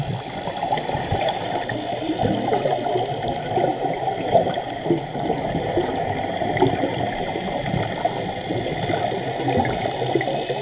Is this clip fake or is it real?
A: real